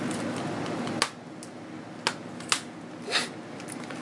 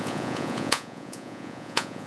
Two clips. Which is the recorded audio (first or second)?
first